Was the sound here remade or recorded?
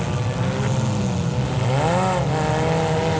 recorded